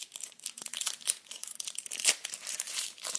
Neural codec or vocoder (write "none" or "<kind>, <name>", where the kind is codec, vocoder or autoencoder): vocoder, BigVGAN v2